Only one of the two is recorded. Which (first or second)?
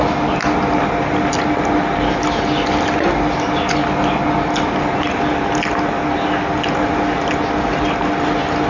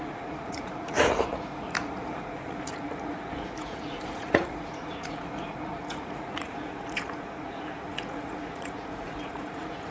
first